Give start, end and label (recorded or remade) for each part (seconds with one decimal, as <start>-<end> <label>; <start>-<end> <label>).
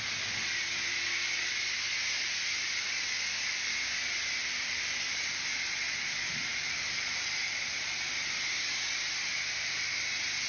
0.0-4.4 recorded; 4.4-5.1 remade; 5.1-6.5 recorded; 6.5-7.7 remade; 7.7-10.5 recorded